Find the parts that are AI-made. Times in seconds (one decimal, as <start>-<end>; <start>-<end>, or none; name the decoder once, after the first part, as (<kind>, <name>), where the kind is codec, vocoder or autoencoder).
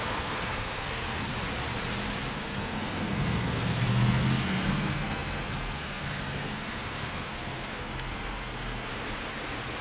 0.0-1.3 (codec, SNAC); 2.3-8.9